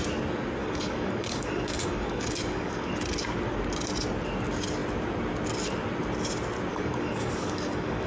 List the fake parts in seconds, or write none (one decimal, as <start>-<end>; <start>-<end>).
0.6-2.9; 6.7-8.1